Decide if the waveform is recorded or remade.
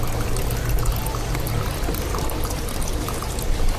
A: recorded